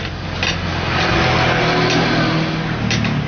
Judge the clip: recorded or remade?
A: recorded